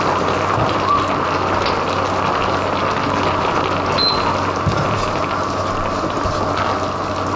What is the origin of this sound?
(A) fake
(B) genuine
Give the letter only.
B